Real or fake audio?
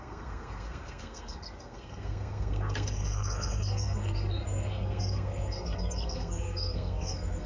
fake